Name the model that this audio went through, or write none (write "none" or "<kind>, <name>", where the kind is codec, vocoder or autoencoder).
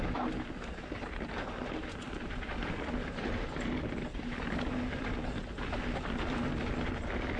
none